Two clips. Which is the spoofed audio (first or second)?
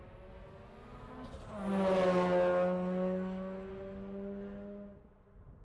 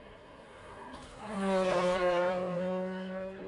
second